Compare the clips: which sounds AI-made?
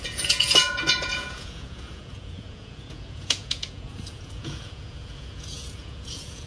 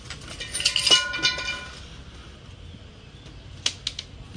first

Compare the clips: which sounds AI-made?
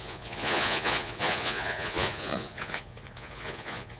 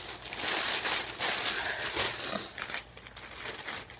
first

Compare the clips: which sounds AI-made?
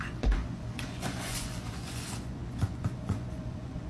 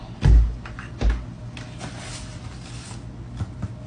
first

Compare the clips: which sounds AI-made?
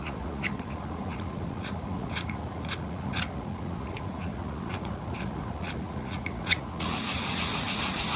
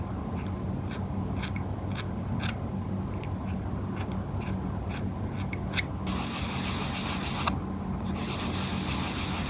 first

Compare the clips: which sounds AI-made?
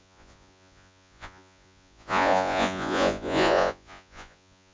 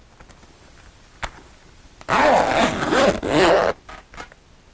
first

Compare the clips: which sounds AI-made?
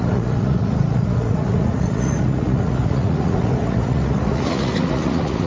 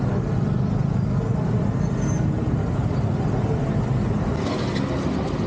first